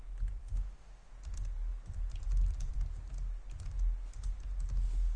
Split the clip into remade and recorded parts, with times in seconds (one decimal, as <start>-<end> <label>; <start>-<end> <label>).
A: 0.0-0.4 recorded; 0.4-1.1 remade; 1.1-5.2 recorded